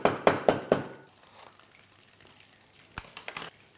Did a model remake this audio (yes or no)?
no